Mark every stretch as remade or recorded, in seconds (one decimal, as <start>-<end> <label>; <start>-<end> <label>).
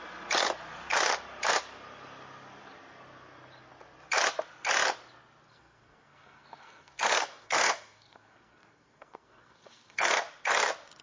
0.0-5.5 recorded; 5.5-10.1 remade; 10.1-11.0 recorded